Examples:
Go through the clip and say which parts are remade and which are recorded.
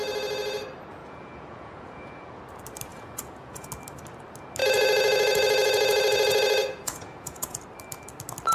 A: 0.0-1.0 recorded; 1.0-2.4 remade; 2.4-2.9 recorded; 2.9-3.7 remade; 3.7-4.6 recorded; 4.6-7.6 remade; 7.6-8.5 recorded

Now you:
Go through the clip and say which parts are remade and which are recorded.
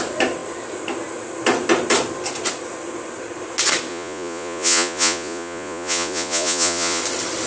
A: 0.0-3.9 recorded; 3.9-7.0 remade; 7.0-7.5 recorded